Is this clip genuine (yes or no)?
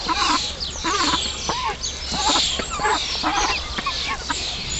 yes